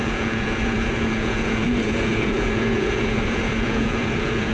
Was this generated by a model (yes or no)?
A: yes